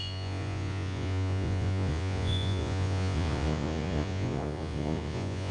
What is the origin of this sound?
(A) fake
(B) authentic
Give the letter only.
A